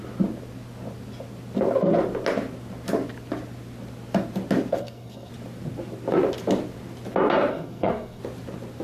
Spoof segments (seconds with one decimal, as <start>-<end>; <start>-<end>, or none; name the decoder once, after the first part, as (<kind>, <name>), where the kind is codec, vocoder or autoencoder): 4.7-5.3 (codec, SNAC); 7.5-8.2